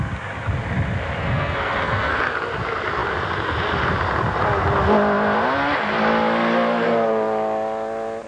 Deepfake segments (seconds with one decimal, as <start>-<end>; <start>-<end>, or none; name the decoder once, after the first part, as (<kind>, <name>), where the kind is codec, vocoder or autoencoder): 1.2-2.2 (codec, SNAC)